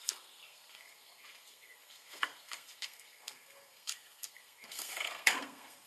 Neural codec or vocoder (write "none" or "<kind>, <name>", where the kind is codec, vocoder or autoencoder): codec, SNAC